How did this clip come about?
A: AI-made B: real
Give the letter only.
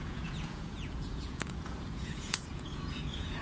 A